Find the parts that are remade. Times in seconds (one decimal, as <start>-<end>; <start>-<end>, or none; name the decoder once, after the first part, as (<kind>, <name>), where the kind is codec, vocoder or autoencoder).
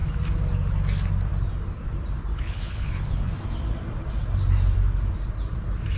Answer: 2.3-3.3 (codec, HILCodec)